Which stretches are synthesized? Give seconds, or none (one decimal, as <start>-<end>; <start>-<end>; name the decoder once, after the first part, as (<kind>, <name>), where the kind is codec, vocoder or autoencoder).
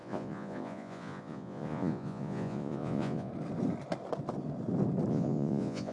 0.0-3.3 (vocoder, Vocos); 5.1-5.9